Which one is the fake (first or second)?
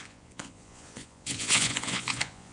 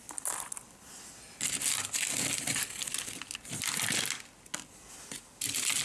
first